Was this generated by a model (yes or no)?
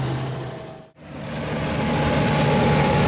no